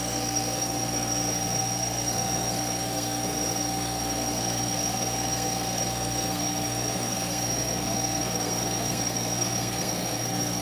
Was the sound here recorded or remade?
remade